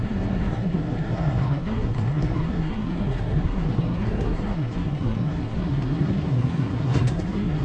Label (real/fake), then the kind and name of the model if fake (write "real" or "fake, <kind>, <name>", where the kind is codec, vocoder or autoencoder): fake, codec, SNAC